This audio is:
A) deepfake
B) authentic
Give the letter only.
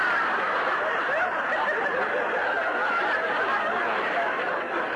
B